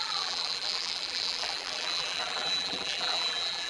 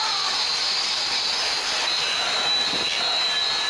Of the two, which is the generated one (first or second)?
first